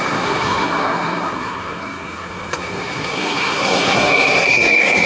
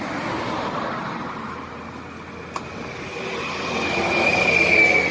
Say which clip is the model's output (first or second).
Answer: first